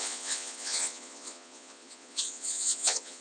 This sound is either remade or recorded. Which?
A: remade